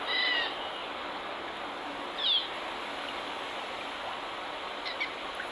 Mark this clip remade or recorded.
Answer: recorded